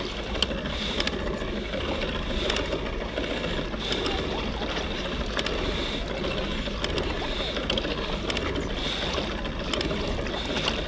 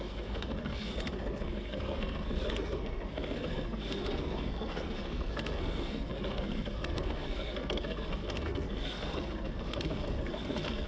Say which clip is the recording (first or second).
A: first